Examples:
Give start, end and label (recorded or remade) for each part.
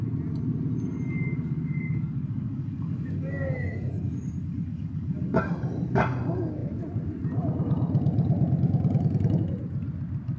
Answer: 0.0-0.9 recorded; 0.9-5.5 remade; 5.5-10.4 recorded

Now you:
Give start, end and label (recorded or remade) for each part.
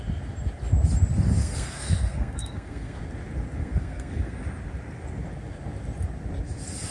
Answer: 0.0-1.4 recorded; 1.4-3.0 remade; 3.0-3.6 recorded; 3.6-4.4 remade; 4.4-6.9 recorded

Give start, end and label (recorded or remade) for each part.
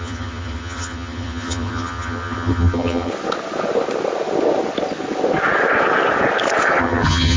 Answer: 0.0-3.1 remade; 3.1-6.8 recorded; 6.8-7.4 remade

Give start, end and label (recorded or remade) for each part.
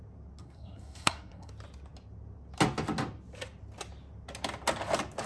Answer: 0.0-0.4 recorded; 0.4-1.5 remade; 1.5-5.3 recorded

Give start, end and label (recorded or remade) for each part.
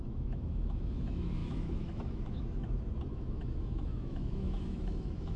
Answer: 0.0-5.4 remade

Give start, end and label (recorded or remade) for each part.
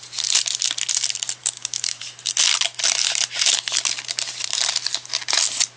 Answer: 0.0-1.4 recorded; 1.4-2.0 remade; 2.0-5.8 recorded